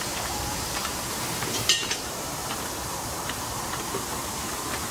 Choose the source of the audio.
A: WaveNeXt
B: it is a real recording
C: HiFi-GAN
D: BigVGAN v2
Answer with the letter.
D